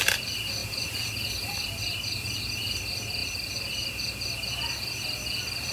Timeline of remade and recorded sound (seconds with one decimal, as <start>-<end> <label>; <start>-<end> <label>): 0.0-0.6 recorded; 0.6-2.4 remade; 2.4-5.7 recorded